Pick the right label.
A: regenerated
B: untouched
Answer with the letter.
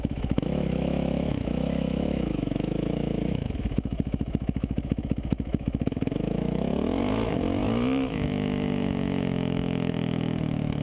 A